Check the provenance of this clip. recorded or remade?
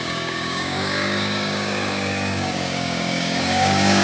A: remade